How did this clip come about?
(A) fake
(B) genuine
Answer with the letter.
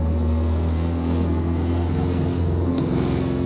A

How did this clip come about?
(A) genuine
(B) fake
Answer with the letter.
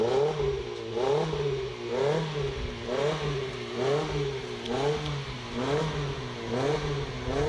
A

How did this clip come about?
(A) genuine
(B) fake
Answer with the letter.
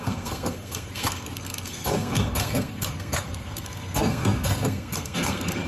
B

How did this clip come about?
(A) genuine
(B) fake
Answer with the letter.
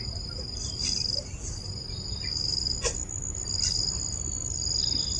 A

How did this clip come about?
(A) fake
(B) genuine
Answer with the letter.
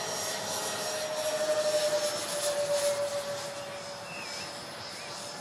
B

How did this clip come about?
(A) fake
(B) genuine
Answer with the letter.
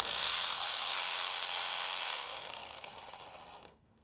A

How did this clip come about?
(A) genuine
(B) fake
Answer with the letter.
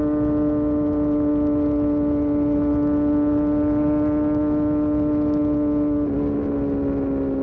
A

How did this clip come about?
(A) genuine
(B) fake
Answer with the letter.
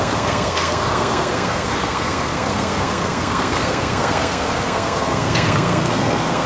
B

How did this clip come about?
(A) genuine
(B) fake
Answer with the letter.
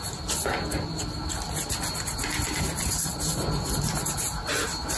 A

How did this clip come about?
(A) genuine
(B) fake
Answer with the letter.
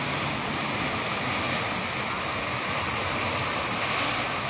A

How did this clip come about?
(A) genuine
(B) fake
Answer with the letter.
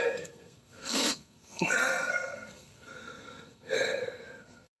B